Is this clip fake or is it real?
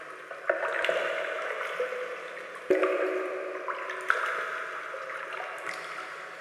real